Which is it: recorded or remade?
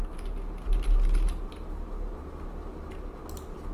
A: recorded